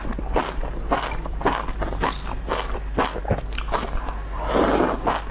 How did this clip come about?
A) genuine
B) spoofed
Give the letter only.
A